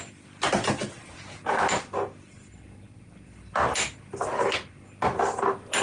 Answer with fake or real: real